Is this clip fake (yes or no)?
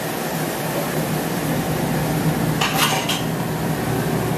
no